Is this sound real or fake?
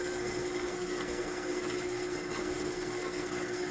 fake